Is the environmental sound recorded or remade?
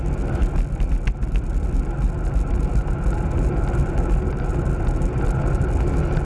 recorded